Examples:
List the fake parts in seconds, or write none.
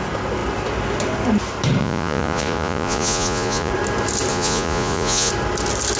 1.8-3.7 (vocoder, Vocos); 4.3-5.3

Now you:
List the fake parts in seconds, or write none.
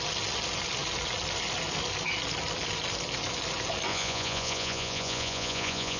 3.9-6.0 (vocoder, Vocos)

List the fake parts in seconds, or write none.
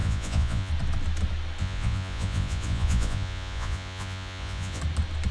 0.0-0.7 (vocoder, Vocos); 1.6-4.8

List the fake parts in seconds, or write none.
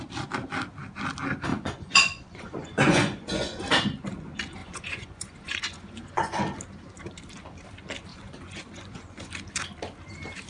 1.5-3.6 (vocoder, Vocos); 4.6-6.4; 8.1-9.3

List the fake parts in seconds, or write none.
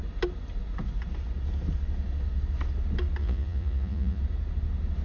3.2-4.2 (vocoder, Vocos)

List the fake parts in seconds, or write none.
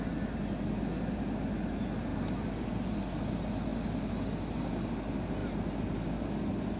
none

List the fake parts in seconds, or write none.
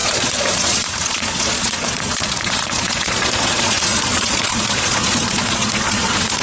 0.0-6.4 (vocoder, Vocos)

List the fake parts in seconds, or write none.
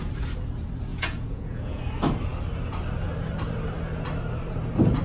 0.9-1.8 (vocoder, Vocos)